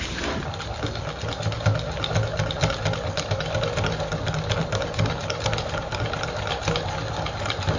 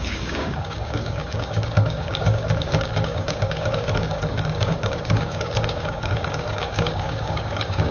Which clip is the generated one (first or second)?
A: second